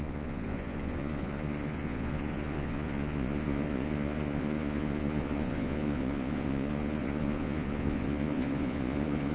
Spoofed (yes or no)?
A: yes